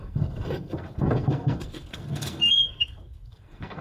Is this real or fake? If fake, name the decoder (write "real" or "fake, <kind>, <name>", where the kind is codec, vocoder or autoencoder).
fake, codec, SNAC